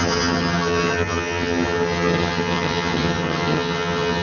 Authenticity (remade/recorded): remade